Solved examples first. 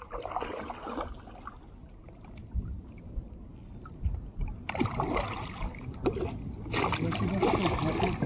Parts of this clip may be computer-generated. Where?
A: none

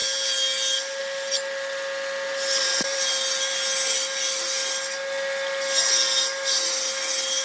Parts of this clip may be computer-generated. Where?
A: 2.6-3.1

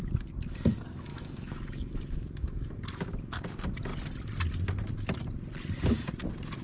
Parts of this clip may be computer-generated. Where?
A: 1.1-2.8

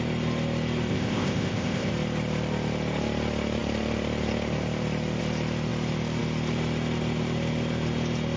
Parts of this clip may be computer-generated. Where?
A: 0.9-1.9

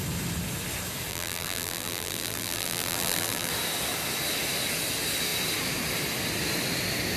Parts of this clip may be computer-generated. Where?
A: 1.1-3.5

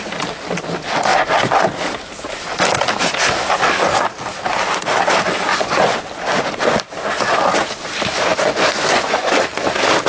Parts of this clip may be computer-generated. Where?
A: 5.5-6.0; 8.1-9.3